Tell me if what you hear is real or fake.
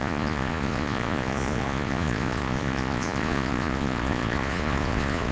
fake